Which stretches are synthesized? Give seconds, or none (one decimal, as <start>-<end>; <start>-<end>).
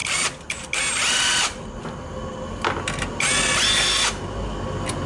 none